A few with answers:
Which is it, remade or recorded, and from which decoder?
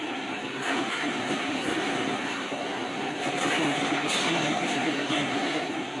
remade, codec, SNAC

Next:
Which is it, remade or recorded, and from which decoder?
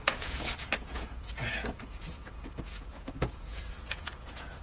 remade, vocoder, Vocos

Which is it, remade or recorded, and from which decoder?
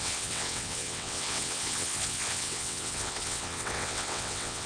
remade, vocoder, WaveNeXt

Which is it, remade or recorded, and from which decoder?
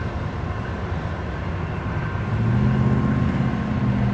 recorded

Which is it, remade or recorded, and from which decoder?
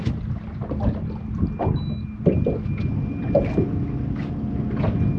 recorded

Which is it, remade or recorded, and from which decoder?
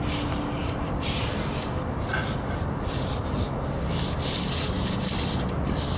recorded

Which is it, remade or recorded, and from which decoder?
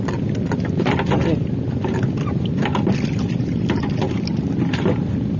recorded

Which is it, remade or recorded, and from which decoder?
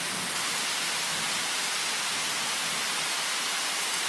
recorded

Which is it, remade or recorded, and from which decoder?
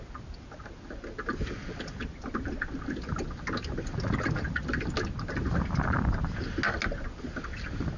recorded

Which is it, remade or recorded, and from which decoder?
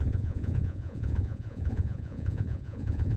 remade, vocoder, Vocos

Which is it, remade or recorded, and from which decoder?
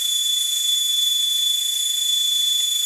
recorded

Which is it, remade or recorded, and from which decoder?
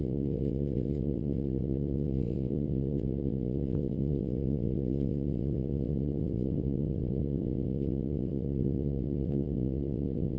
remade, vocoder, WaveNeXt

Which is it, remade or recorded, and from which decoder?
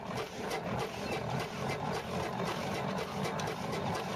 remade, vocoder, BigVGAN v2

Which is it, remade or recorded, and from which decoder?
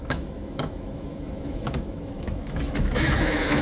remade, autoencoder, DAC-VAE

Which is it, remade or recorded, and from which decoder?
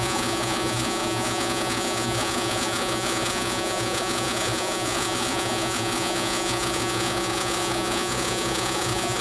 remade, vocoder, Vocos